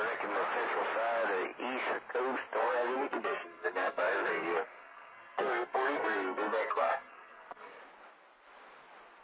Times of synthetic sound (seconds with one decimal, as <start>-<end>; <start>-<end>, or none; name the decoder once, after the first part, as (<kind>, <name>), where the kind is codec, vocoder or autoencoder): 2.6-7.8 (codec, SNAC)